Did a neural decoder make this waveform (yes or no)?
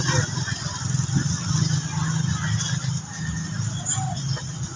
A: no